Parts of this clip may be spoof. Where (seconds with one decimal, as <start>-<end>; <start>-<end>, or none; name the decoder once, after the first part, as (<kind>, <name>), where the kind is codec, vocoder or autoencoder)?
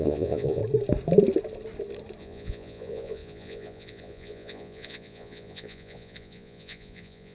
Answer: 0.0-0.6 (vocoder, Vocos); 2.2-7.3